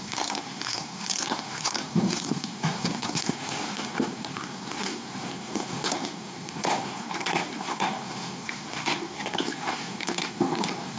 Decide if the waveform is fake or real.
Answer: fake